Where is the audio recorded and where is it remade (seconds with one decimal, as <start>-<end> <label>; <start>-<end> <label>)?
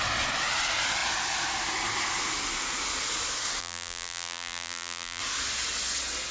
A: 0.0-3.6 recorded; 3.6-5.2 remade; 5.2-6.3 recorded